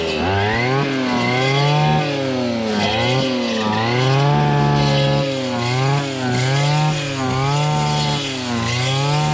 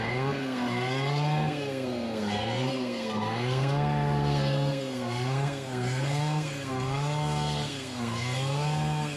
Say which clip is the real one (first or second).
first